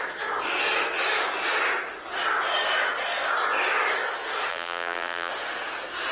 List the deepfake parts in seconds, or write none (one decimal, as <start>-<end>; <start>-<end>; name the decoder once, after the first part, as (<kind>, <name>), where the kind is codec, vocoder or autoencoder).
4.5-5.3 (vocoder, BigVGAN v2)